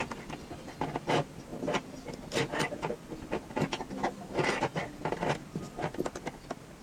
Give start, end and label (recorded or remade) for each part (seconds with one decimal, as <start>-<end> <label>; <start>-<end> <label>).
0.0-6.8 recorded